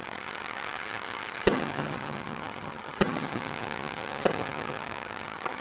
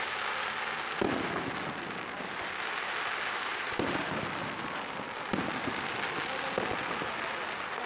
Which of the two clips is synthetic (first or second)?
first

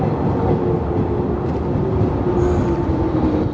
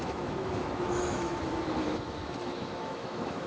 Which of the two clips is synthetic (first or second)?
second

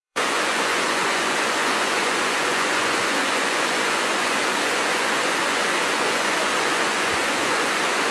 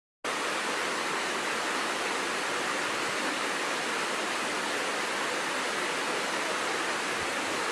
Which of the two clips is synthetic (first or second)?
first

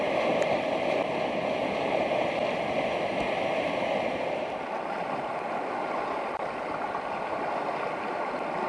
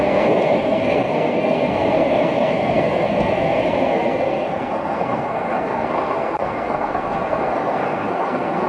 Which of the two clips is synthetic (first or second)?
second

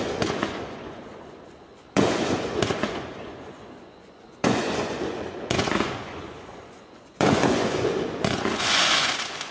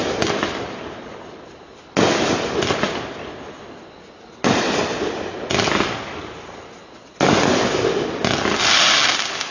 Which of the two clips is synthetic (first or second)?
first